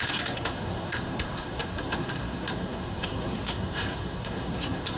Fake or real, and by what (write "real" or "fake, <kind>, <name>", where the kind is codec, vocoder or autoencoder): fake, codec, SNAC